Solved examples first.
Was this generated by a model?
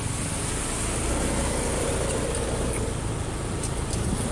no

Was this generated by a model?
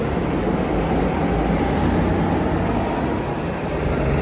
no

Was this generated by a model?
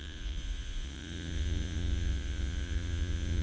yes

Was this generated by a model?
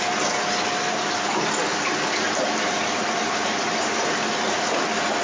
no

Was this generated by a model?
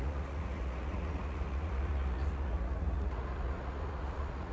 yes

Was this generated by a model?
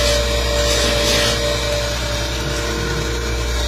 no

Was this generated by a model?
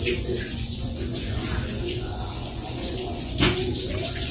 yes